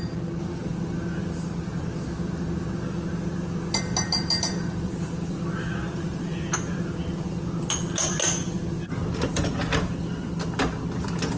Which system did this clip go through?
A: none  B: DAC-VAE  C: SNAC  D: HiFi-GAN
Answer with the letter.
A